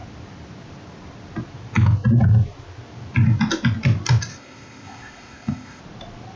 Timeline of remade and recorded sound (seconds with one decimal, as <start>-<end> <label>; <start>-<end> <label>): 0.0-4.3 recorded; 4.3-5.8 remade; 5.8-6.4 recorded